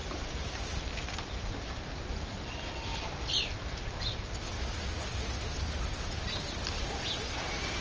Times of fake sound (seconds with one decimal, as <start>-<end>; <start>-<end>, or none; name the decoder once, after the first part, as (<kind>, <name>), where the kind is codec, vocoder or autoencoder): 0.0-0.8 (vocoder, BigVGAN v2)